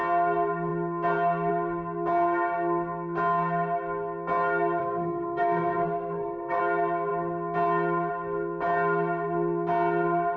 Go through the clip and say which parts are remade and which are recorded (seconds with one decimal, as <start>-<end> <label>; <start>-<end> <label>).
0.0-4.8 recorded; 4.8-6.6 remade; 6.6-10.4 recorded